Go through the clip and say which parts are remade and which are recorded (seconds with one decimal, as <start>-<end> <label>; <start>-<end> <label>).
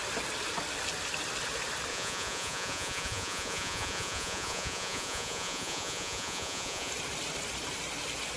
0.0-1.9 recorded; 1.9-6.9 remade; 6.9-8.4 recorded